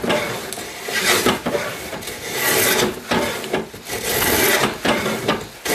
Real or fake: real